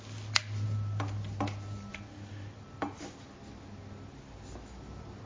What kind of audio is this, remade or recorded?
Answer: recorded